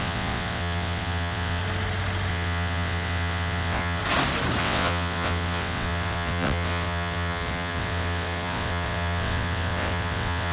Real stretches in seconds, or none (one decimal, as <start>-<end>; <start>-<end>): 1.6-2.3; 4.0-4.6